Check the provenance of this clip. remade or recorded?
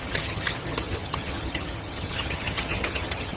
remade